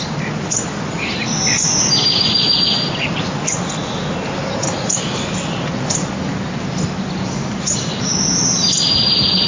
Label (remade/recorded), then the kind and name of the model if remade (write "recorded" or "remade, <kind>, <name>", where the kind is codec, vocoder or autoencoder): recorded